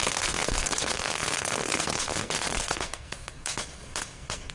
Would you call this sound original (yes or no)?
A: no